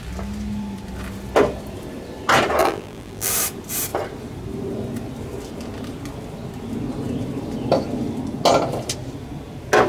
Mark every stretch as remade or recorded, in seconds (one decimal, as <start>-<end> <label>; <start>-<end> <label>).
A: 0.0-2.6 recorded; 2.6-3.3 remade; 3.3-9.9 recorded